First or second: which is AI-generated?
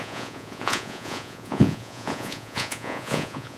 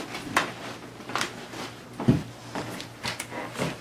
first